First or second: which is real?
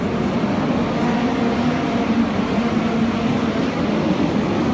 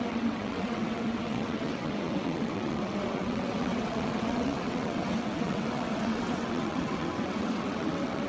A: first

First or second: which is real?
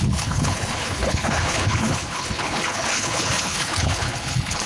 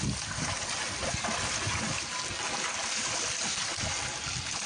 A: second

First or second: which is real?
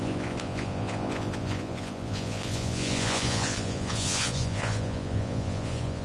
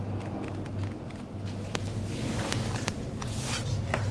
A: second